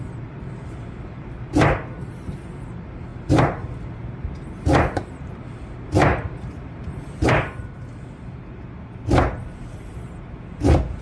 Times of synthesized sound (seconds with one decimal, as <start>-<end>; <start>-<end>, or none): 6.1-7.3